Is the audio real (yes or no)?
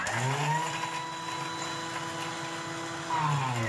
yes